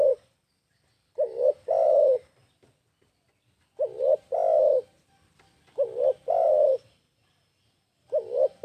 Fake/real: real